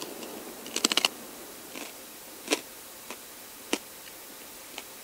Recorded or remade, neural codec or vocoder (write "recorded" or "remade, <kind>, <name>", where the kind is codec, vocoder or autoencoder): recorded